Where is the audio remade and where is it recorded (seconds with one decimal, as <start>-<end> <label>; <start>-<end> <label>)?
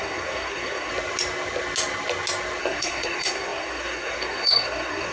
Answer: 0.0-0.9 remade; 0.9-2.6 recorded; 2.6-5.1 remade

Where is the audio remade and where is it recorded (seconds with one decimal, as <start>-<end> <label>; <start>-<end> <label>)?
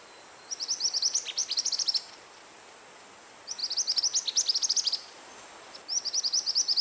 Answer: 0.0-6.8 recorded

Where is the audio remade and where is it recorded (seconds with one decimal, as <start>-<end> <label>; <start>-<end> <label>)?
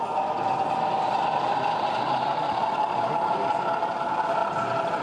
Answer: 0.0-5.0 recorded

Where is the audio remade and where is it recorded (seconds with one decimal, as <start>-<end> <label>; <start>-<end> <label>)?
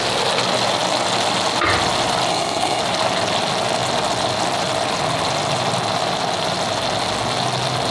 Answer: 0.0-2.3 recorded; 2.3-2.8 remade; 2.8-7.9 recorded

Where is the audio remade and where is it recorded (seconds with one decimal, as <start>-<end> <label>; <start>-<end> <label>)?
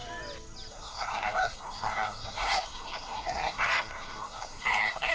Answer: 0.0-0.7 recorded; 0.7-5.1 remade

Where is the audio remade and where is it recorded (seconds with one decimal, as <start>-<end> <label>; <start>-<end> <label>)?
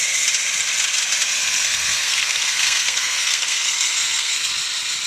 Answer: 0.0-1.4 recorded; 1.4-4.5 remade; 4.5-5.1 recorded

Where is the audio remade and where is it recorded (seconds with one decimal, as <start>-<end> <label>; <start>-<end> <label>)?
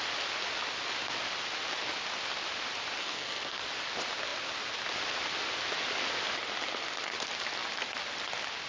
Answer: 0.0-3.0 recorded; 3.0-3.7 remade; 3.7-8.7 recorded